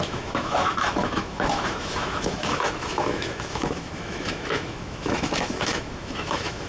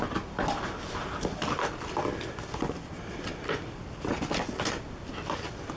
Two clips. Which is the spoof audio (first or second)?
first